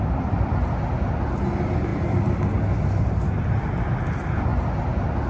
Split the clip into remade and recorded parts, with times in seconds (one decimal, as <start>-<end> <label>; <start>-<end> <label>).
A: 0.0-5.3 recorded